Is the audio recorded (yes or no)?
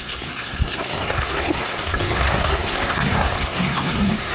no